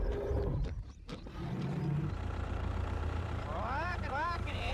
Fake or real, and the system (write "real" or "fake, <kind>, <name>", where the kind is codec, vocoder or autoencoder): fake, vocoder, BigVGAN v2